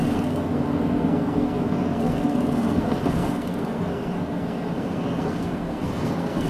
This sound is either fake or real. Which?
fake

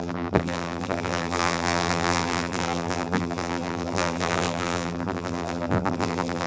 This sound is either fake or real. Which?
fake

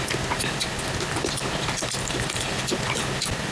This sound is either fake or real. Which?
real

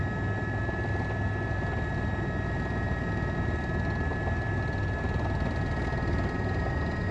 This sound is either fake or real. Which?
real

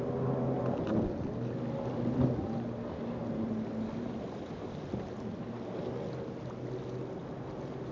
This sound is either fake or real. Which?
real